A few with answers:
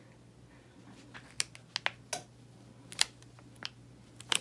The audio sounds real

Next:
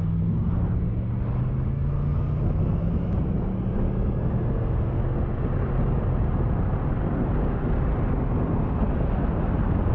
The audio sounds real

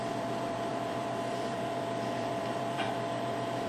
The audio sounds fake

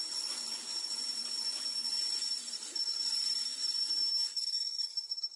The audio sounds real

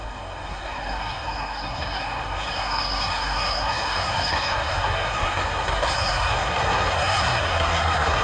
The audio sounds fake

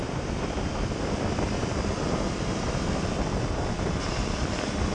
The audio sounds fake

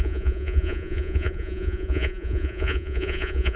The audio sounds fake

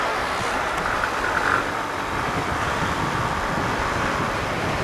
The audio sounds real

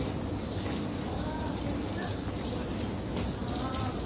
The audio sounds real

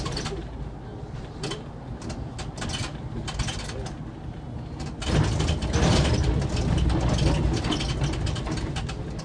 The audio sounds real